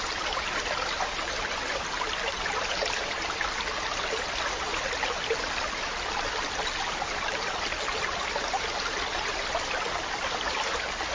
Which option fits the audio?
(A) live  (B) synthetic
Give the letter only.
A